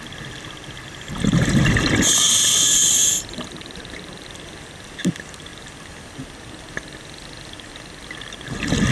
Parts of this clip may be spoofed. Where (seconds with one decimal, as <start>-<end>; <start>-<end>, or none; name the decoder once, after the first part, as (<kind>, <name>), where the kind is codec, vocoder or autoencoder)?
none